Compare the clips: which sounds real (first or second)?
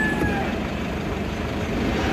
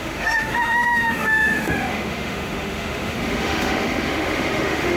first